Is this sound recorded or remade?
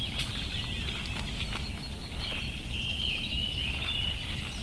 recorded